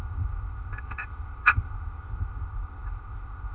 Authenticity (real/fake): fake